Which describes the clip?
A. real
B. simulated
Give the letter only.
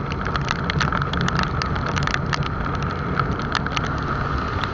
A